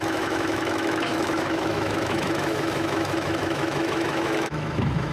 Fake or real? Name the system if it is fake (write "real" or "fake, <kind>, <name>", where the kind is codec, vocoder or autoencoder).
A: fake, autoencoder, DAC-VAE